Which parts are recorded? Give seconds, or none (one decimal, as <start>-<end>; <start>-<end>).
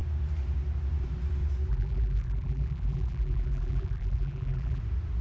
0.0-1.7; 4.8-5.2